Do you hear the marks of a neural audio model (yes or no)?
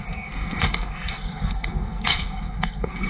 yes